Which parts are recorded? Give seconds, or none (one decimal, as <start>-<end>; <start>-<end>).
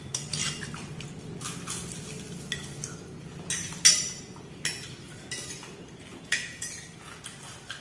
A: 0.0-6.1; 6.7-7.8